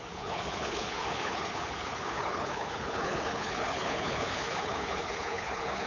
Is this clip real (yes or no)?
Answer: no